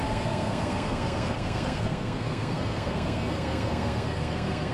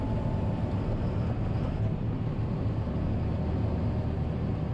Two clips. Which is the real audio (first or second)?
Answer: second